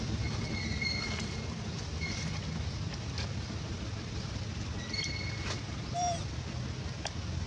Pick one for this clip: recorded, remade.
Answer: remade